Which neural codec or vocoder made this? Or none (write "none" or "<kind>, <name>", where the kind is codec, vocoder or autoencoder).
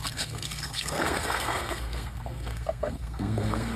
codec, SNAC